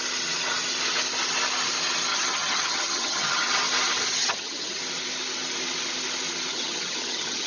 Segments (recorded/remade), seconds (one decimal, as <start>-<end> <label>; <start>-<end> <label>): 0.0-2.1 recorded; 2.1-3.5 remade; 3.5-4.2 recorded; 4.2-4.8 remade; 4.8-6.5 recorded; 6.5-7.5 remade